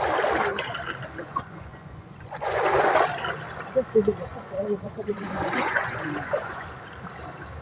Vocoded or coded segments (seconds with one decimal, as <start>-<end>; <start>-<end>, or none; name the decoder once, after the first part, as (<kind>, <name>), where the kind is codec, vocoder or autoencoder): 1.2-2.9 (vocoder, Vocos); 4.3-6.7